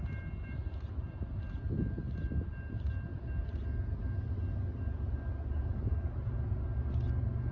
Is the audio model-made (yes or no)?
no